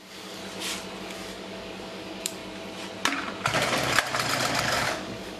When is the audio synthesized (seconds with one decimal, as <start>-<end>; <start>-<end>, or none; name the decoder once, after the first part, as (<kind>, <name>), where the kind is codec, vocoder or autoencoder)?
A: 0.0-0.4 (codec, DAC); 1.0-2.4; 4.6-5.4